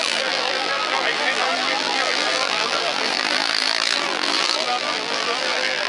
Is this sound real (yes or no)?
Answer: no